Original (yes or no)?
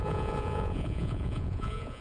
no